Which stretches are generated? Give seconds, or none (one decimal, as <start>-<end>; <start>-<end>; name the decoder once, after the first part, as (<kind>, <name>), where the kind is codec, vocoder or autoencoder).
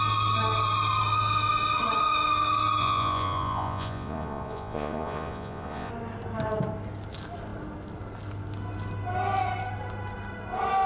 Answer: 2.8-5.9 (vocoder, Vocos)